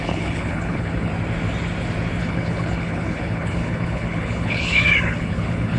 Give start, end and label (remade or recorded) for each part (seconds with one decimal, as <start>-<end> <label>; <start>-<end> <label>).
0.0-1.1 remade; 1.1-2.2 recorded; 2.2-5.8 remade